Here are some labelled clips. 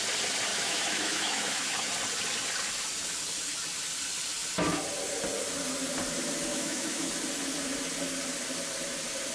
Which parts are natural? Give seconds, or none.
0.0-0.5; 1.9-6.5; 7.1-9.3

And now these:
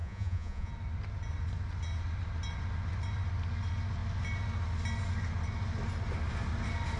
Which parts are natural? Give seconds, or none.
0.7-7.0

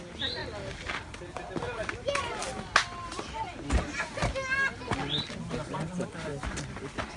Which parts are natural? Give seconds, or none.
0.0-7.2

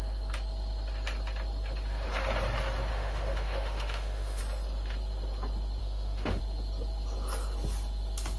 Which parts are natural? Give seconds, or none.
0.0-2.9; 4.4-5.8; 6.4-8.4

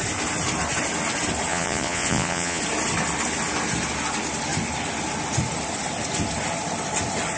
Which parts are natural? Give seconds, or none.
0.0-1.5; 2.6-7.4

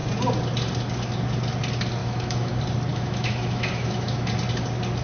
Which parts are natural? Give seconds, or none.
0.0-2.0; 2.5-2.9; 4.3-5.0